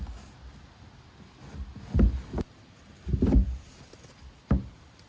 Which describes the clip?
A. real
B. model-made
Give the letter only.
A